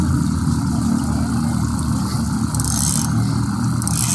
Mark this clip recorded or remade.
recorded